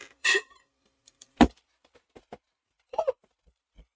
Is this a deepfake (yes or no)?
yes